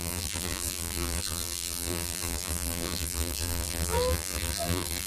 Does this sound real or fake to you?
fake